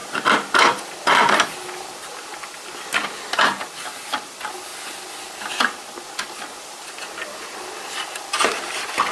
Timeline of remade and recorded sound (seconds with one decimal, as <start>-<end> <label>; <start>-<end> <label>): 0.0-9.1 recorded